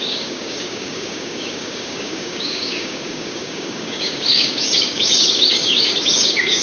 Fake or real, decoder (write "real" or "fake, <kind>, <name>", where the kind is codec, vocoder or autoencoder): fake, codec, DAC